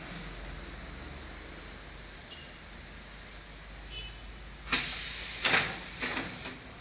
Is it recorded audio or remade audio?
recorded